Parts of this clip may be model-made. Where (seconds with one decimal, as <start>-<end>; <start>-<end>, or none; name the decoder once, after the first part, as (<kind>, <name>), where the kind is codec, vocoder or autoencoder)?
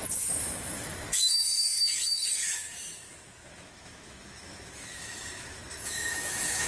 0.0-6.7 (autoencoder, DAC-VAE)